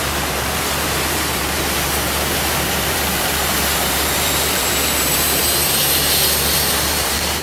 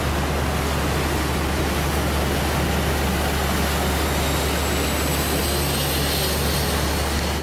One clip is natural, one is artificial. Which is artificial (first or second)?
first